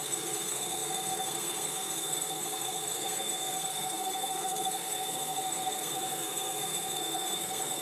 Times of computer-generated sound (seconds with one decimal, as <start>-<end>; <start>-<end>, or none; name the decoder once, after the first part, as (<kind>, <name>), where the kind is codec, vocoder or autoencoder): 0.0-7.8 (codec, SNAC)